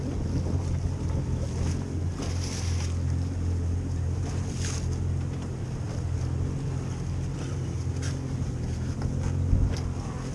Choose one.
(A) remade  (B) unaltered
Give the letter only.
B